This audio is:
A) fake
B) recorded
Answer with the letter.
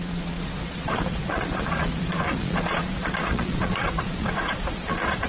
A